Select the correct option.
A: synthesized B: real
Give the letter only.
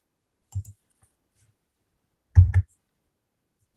A